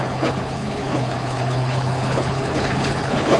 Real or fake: fake